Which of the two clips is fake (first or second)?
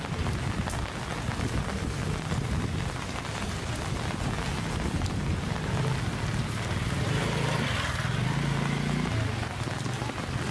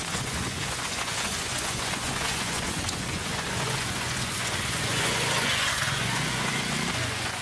second